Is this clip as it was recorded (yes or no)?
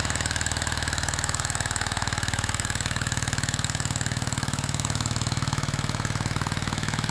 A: no